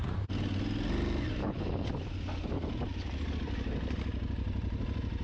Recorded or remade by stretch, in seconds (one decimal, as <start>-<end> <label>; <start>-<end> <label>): 0.0-1.4 recorded; 1.4-1.9 remade; 1.9-5.2 recorded